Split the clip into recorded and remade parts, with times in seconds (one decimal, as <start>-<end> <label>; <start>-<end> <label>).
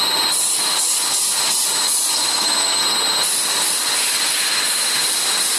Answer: 0.0-2.2 recorded; 2.2-2.8 remade; 2.8-5.6 recorded